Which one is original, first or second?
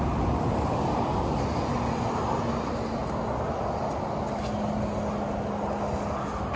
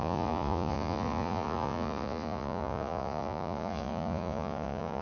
first